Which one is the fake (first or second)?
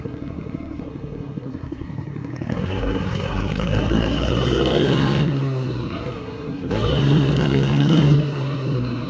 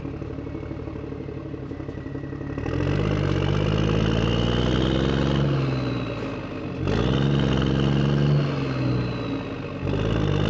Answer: first